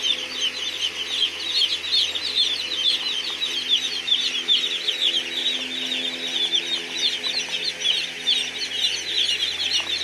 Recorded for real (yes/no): yes